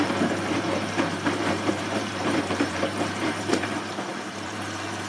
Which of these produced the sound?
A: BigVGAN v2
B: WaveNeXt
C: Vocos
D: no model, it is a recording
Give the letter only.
A